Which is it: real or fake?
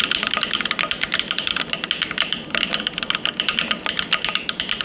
real